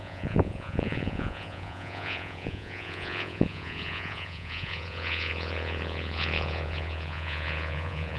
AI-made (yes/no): yes